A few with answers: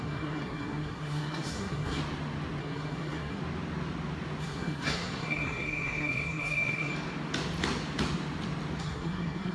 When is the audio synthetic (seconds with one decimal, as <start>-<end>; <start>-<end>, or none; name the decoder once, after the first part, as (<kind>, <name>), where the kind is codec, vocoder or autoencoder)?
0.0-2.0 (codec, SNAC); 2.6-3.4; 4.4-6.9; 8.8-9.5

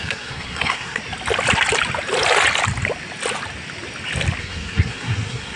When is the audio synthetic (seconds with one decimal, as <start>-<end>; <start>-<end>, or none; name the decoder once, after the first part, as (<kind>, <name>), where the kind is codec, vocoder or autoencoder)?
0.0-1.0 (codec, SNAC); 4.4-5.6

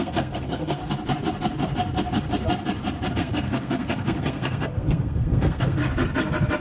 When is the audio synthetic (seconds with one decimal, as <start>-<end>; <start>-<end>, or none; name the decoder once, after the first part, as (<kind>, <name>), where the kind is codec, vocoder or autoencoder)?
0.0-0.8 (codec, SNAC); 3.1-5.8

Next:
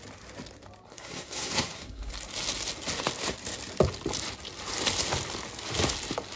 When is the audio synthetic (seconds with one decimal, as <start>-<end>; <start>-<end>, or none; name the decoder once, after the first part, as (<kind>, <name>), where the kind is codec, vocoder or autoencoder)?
0.9-2.1 (codec, SNAC)